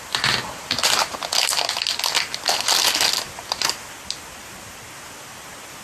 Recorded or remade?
recorded